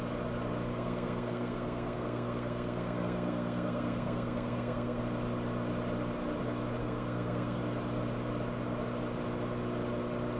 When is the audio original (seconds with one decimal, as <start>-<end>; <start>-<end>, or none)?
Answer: 0.0-0.7; 5.0-6.8; 7.6-10.4